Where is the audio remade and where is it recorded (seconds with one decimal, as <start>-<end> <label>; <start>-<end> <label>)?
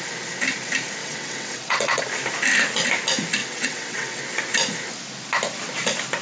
0.0-1.0 recorded; 1.0-2.0 remade; 2.0-3.4 recorded; 3.4-4.2 remade; 4.2-6.2 recorded